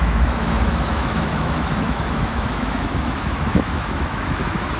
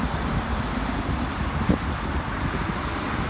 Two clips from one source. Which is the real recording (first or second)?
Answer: second